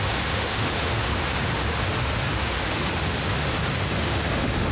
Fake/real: fake